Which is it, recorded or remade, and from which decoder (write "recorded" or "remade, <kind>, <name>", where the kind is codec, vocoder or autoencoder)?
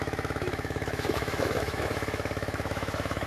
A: remade, autoencoder, DAC-VAE